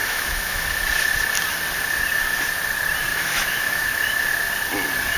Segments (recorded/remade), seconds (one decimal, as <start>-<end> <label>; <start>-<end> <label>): 0.0-0.8 remade; 0.8-3.1 recorded; 3.1-4.3 remade; 4.3-5.2 recorded